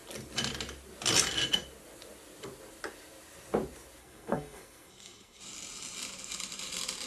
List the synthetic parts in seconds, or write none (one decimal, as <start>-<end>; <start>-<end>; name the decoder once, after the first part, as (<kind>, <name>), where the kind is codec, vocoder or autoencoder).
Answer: 4.0-5.4 (codec, SNAC)